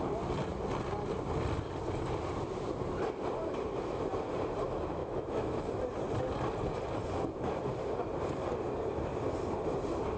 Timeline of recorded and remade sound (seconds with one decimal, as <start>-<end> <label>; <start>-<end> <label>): 0.0-5.0 recorded; 5.0-5.6 remade; 5.6-10.2 recorded